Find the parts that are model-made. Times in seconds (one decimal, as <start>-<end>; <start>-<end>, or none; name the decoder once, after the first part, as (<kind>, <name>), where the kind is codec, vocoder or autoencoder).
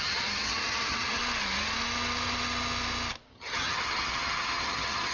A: 0.0-1.2 (vocoder, HiFi-GAN); 3.3-5.1